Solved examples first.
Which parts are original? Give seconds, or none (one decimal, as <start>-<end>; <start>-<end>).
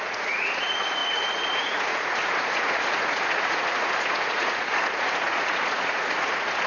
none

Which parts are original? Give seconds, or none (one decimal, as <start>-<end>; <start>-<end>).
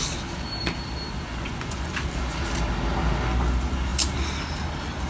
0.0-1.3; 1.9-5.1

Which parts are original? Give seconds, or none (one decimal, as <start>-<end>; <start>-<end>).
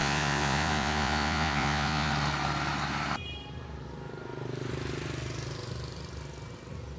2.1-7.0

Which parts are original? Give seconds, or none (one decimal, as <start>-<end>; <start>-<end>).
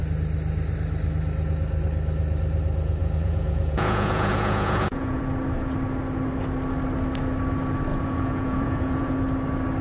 0.0-3.0; 5.2-7.9; 9.1-9.8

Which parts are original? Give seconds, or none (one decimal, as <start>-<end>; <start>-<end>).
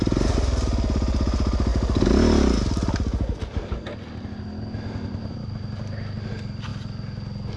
0.0-7.6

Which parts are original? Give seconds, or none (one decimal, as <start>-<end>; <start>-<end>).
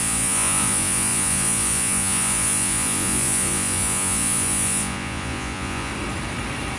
5.9-6.8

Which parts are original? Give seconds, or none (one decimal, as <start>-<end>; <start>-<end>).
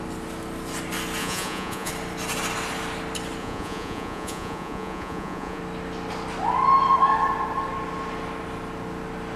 0.0-1.2; 1.9-3.4; 5.6-9.4